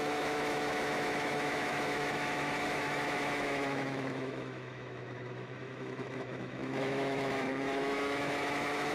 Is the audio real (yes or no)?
no